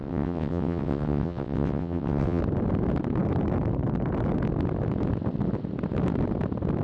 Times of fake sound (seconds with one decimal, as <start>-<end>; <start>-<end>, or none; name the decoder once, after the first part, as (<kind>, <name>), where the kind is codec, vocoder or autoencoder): 0.0-2.4 (vocoder, WaveNeXt)

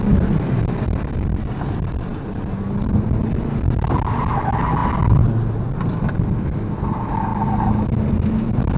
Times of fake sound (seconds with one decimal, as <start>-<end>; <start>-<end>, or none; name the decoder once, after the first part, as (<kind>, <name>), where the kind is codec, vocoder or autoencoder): none

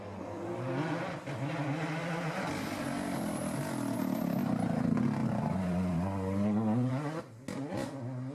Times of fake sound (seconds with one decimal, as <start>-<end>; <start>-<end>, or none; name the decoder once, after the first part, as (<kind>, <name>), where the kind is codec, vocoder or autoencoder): 5.2-6.9 (vocoder, BigVGAN v2)